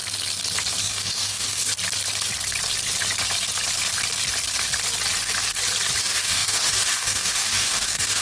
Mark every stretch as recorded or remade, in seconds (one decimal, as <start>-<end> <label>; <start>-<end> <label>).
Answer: 0.0-0.8 recorded; 0.8-1.7 remade; 1.7-6.0 recorded; 6.0-8.2 remade